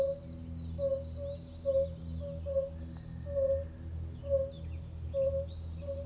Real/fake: real